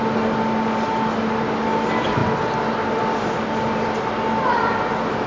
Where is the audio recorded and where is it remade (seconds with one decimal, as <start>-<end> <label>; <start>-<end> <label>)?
0.0-5.3 recorded